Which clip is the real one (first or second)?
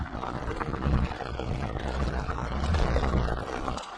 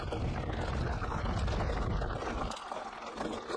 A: second